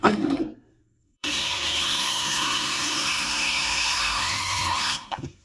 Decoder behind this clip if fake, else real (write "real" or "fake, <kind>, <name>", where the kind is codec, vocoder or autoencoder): fake, codec, SNAC